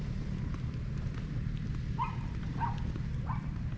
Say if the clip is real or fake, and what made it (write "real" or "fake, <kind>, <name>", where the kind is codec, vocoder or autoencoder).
real